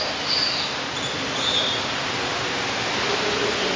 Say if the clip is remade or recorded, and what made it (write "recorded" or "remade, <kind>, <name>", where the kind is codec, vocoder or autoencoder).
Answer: recorded